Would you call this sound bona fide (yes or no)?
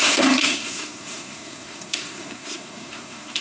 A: no